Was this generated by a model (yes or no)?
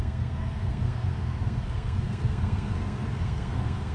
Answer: yes